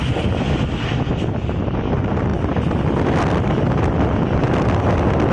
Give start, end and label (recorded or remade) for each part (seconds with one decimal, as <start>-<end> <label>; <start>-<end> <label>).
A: 0.0-5.3 recorded